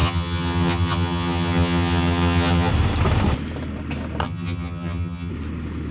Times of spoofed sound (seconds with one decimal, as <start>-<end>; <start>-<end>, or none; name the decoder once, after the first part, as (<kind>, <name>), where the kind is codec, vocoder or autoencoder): 0.0-2.7 (vocoder, HiFi-GAN); 4.2-5.3